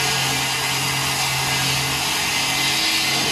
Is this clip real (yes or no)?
yes